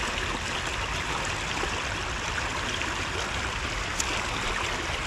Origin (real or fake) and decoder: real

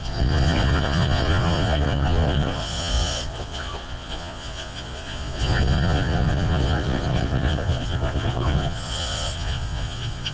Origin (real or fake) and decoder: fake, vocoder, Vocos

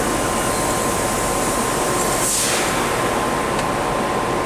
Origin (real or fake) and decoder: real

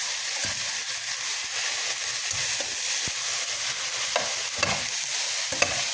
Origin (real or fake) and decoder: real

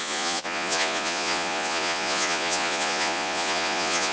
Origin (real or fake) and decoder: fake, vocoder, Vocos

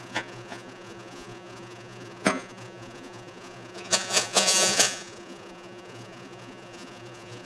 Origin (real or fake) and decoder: fake, vocoder, Vocos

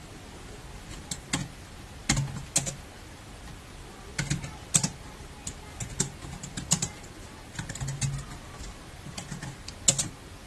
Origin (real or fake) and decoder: real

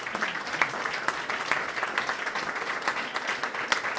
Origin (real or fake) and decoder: real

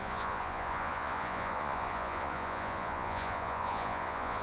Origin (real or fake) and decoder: fake, vocoder, Vocos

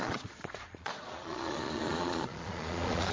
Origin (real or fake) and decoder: fake, vocoder, Vocos